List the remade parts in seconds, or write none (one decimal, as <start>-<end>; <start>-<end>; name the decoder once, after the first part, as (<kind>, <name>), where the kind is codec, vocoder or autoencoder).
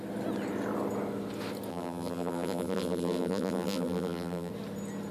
1.7-4.5 (vocoder, BigVGAN v2)